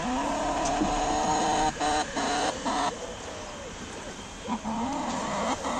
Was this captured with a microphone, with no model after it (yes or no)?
no